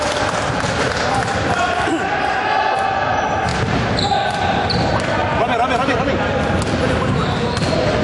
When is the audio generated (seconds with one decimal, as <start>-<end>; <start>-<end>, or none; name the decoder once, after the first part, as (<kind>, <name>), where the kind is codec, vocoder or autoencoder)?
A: none